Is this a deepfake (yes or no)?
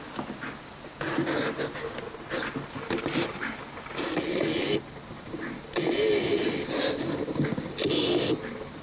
no